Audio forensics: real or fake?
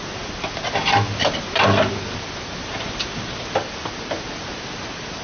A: real